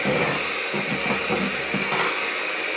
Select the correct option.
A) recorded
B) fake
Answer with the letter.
A